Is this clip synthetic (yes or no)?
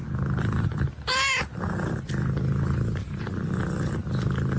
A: no